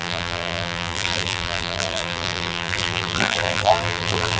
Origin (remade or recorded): remade